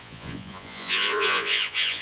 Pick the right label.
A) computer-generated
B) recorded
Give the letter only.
A